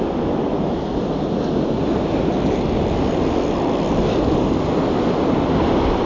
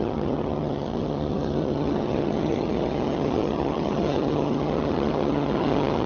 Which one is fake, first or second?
second